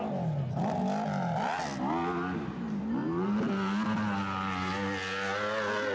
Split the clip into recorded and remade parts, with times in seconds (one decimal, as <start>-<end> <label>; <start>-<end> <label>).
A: 0.0-5.9 recorded